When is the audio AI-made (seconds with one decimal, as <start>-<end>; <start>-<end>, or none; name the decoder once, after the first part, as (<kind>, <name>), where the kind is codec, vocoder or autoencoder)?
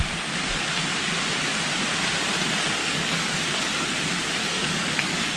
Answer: 2.8-3.4 (codec, DAC); 4.4-5.4